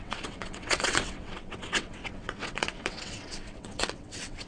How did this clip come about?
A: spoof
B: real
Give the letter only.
A